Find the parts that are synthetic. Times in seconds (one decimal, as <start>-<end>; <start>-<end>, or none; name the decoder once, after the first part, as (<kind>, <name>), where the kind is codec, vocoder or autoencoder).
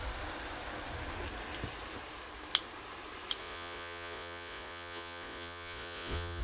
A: 3.4-6.4 (vocoder, Vocos)